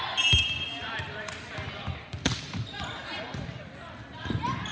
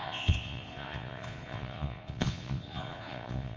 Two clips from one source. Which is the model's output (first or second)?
second